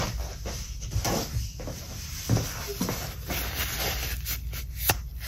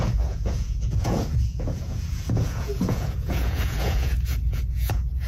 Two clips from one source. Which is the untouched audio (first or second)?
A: first